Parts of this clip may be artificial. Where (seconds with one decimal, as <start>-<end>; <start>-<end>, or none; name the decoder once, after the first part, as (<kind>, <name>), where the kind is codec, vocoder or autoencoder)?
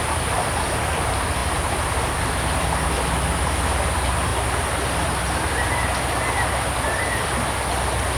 none